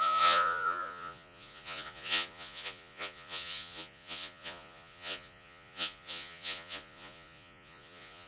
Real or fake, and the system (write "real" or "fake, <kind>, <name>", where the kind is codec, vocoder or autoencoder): fake, vocoder, Vocos